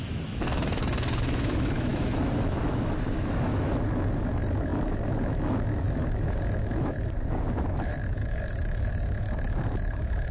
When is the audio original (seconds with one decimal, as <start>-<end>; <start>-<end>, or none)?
none